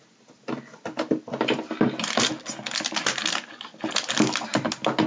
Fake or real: real